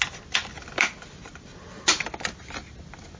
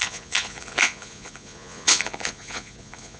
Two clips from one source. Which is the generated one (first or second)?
second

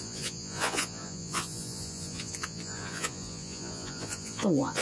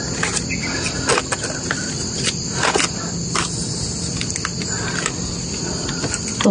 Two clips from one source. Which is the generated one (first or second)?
first